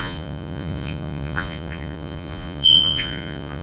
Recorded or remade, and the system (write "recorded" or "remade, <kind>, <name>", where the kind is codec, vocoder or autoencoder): remade, vocoder, Vocos